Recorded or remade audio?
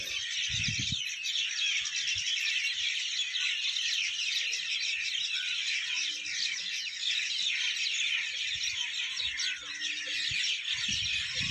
recorded